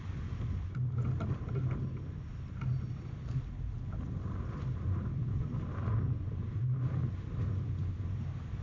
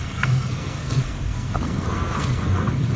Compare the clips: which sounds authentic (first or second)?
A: first